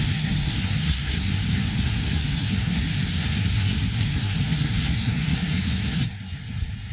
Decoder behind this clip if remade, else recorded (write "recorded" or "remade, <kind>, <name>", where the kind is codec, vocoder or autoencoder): remade, codec, SNAC